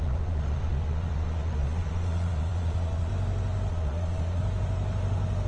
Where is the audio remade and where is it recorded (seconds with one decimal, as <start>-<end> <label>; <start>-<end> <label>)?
0.0-3.1 remade; 3.1-3.7 recorded; 3.7-4.4 remade; 4.4-5.5 recorded